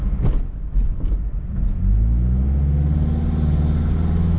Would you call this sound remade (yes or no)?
no